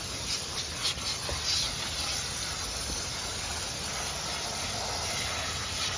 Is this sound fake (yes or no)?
no